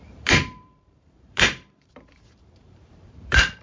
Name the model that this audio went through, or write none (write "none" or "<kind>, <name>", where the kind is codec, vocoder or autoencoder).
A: vocoder, BigVGAN v2